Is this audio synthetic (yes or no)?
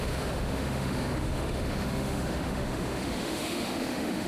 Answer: yes